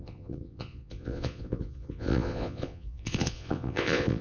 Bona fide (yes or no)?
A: no